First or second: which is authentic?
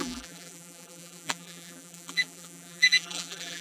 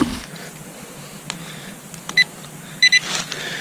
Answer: second